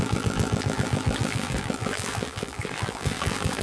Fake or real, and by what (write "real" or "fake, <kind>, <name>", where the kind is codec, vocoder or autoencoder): fake, vocoder, BigVGAN v2